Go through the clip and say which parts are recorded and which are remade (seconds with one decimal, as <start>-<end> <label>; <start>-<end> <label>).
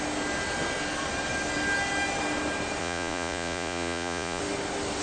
0.0-2.8 recorded; 2.8-4.4 remade; 4.4-5.0 recorded